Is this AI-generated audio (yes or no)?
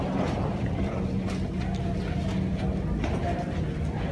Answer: no